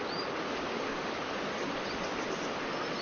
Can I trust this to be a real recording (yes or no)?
yes